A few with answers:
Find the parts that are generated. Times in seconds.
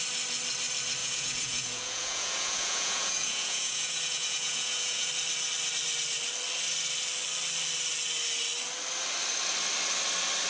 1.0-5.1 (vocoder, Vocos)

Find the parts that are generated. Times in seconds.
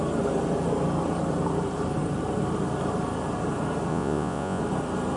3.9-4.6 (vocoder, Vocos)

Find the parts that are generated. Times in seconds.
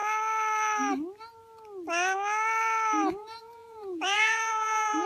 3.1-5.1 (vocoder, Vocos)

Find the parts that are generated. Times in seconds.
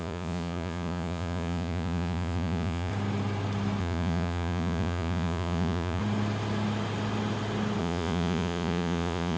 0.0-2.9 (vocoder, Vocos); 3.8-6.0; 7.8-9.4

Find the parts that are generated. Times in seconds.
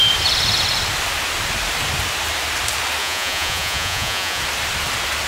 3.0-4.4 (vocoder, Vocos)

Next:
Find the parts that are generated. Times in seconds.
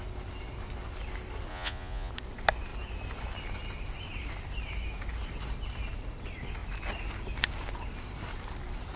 1.5-2.1 (vocoder, Vocos)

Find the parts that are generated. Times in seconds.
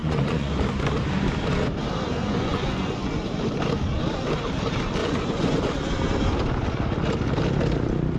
0.0-0.5 (vocoder, Vocos); 2.2-3.2; 5.0-5.6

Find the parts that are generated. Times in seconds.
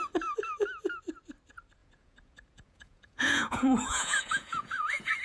1.8-5.2 (vocoder, Vocos)